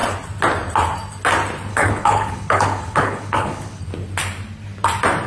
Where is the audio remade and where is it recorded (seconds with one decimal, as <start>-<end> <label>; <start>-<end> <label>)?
0.0-1.7 recorded; 1.7-3.8 remade; 3.8-5.3 recorded